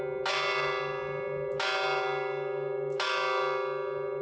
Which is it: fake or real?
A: real